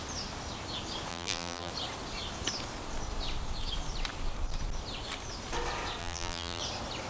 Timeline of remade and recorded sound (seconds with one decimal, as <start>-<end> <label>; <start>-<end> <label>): 0.0-1.1 recorded; 1.1-1.7 remade; 1.7-6.0 recorded; 6.0-6.6 remade; 6.6-7.1 recorded